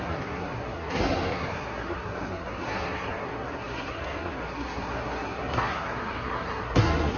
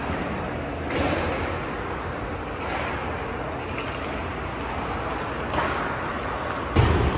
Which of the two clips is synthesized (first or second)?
first